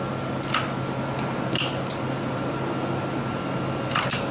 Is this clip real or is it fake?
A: real